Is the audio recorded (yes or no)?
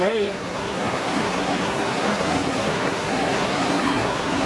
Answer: no